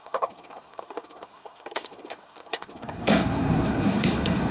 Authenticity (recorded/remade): remade